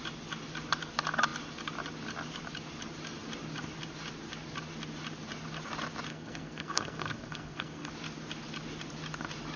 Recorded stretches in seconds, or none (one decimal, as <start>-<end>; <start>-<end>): 0.0-6.1; 7.9-9.6